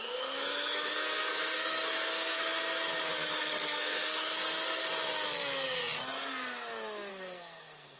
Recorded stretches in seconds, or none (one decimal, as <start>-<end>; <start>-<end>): 2.4-3.4; 4.8-7.1